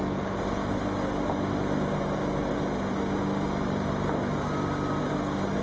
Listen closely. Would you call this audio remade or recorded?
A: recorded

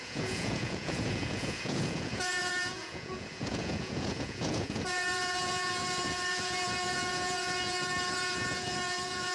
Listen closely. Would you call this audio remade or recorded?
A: remade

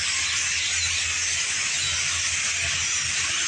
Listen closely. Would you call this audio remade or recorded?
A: recorded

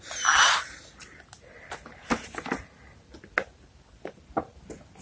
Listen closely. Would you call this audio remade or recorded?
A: recorded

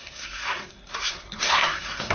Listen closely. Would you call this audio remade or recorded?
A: remade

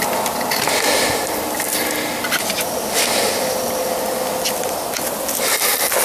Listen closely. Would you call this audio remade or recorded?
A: recorded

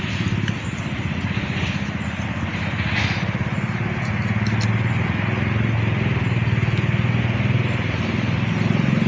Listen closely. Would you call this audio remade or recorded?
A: recorded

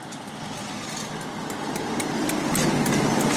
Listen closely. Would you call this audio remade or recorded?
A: recorded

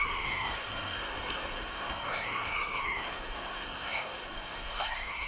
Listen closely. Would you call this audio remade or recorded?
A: remade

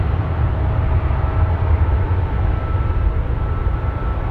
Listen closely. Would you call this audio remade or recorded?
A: recorded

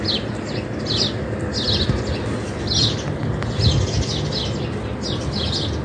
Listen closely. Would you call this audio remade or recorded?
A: recorded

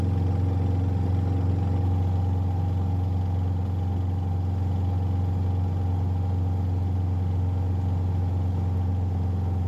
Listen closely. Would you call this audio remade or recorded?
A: recorded